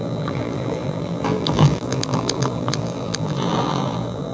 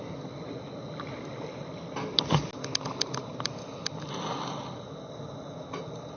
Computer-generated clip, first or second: first